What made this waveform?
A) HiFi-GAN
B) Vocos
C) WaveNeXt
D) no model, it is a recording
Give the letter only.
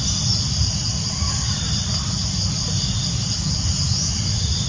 D